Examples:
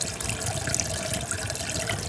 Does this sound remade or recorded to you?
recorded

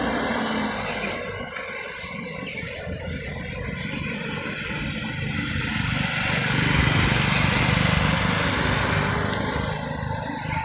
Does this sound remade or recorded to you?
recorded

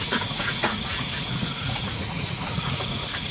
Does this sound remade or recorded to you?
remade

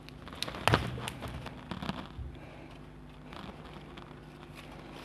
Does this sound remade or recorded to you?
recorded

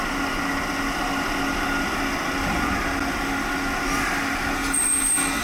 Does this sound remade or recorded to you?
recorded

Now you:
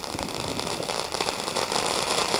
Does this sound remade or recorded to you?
remade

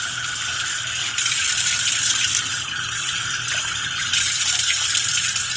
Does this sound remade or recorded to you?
remade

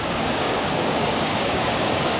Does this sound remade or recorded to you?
remade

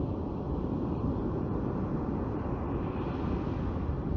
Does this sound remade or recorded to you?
recorded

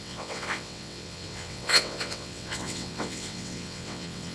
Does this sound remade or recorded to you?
remade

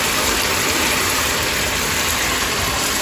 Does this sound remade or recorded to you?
remade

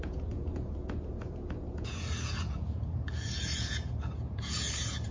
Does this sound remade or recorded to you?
remade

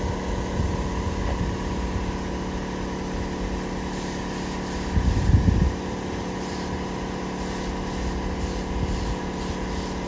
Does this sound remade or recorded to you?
recorded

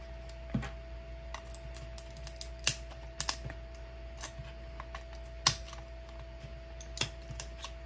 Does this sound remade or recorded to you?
recorded